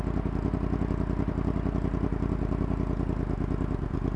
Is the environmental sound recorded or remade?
recorded